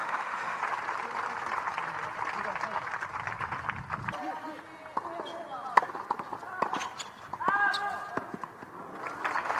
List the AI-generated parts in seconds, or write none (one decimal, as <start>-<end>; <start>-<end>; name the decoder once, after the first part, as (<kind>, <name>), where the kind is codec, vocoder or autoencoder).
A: 0.0-0.6 (autoencoder, DAC-VAE)